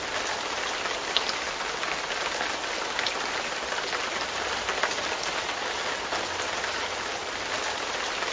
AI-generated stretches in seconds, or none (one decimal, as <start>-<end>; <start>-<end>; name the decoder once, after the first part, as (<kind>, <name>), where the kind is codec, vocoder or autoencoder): none